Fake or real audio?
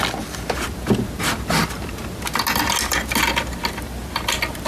real